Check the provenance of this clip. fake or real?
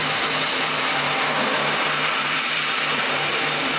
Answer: fake